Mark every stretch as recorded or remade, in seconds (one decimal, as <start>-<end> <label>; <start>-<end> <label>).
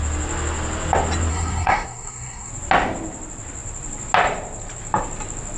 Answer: 0.0-1.3 recorded; 1.3-2.5 remade; 2.5-5.6 recorded